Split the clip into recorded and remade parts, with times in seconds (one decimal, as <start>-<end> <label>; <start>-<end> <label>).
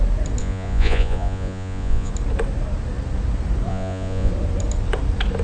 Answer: 0.0-0.4 recorded; 0.4-2.1 remade; 2.1-3.7 recorded; 3.7-4.3 remade; 4.3-5.4 recorded